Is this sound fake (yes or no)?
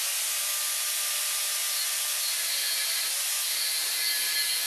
no